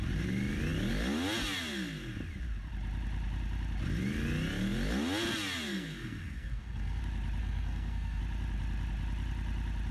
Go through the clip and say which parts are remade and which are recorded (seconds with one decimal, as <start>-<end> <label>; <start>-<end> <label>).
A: 0.0-5.7 recorded; 5.7-7.0 remade; 7.0-7.4 recorded; 7.4-8.2 remade; 8.2-9.9 recorded

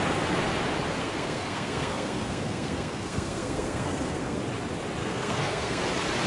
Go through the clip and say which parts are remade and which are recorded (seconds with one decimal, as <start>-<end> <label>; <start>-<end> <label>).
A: 0.0-1.0 recorded; 1.0-4.4 remade; 4.4-5.0 recorded; 5.0-5.8 remade; 5.8-6.3 recorded

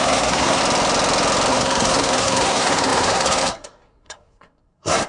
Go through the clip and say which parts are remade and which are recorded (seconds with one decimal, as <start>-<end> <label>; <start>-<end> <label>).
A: 0.0-0.6 remade; 0.6-1.5 recorded; 1.5-5.1 remade

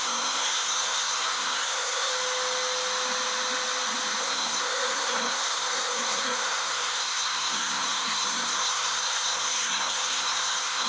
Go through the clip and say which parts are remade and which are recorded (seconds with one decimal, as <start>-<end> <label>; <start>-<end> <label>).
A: 0.0-2.1 remade; 2.1-4.2 recorded; 4.2-10.9 remade

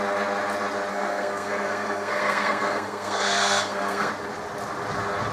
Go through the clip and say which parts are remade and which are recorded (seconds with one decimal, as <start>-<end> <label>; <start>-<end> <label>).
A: 0.0-0.9 recorded; 0.9-4.1 remade; 4.1-5.3 recorded